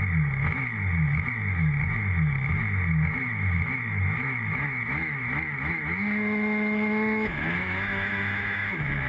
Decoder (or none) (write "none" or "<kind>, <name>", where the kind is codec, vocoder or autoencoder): autoencoder, DAC-VAE